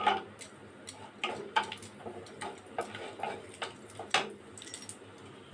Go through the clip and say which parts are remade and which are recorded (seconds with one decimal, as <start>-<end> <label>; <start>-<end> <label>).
0.0-5.5 recorded